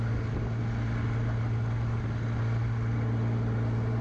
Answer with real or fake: real